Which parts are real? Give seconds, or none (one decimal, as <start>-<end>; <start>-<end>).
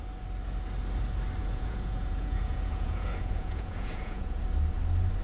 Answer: 0.0-1.4; 4.4-5.2